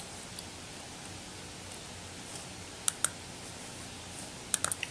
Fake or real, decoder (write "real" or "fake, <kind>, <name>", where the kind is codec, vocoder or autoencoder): real